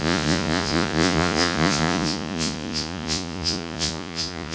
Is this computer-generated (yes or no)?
yes